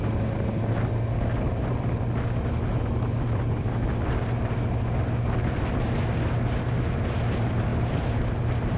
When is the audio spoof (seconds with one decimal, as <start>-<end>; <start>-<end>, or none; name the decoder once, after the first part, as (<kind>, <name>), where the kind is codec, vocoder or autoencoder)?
7.7-8.2 (vocoder, BigVGAN v2)